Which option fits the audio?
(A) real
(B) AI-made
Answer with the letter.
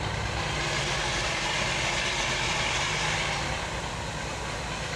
A